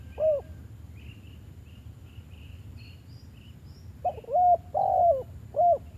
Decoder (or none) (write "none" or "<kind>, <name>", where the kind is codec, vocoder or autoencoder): vocoder, BigVGAN v2